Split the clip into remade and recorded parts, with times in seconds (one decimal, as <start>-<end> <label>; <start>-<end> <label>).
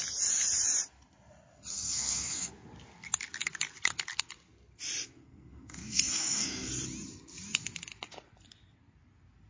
0.0-1.7 recorded; 1.7-2.5 remade; 2.5-5.1 recorded; 5.1-6.7 remade; 6.7-9.5 recorded